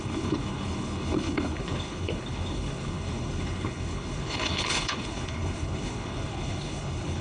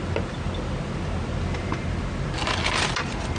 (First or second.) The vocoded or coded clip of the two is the first